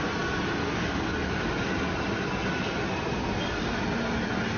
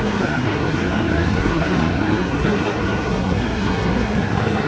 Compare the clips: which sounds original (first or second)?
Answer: first